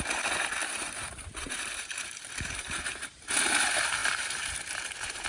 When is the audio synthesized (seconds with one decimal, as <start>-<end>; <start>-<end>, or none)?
0.0-5.3

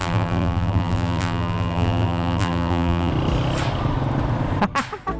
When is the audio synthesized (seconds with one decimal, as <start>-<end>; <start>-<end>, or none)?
0.0-3.1